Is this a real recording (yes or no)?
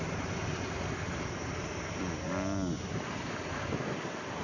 yes